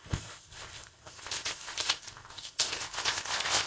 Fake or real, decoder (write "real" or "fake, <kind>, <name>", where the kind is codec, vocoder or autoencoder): fake, codec, ZipCodec